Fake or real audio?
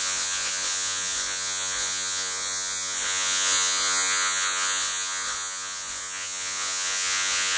fake